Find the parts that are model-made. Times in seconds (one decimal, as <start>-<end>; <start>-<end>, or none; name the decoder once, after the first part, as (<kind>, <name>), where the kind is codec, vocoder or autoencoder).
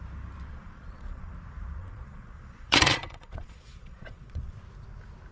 0.5-1.3 (vocoder, Vocos); 1.8-4.4